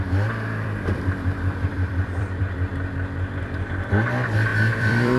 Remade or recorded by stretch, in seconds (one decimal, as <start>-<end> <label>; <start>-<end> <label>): 0.0-2.7 remade; 2.7-3.3 recorded; 3.3-5.2 remade